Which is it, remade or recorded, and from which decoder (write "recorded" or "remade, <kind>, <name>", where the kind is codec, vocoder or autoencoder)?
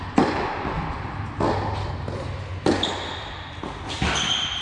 recorded